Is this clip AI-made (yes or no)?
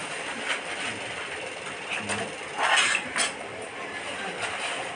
no